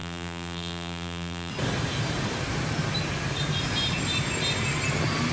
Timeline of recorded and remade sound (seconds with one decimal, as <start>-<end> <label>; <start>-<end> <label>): 0.0-1.5 remade; 1.5-5.3 recorded